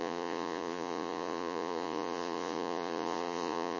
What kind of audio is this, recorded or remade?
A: remade